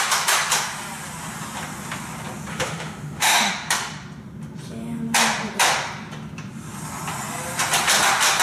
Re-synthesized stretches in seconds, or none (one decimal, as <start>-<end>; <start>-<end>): 2.5-3.5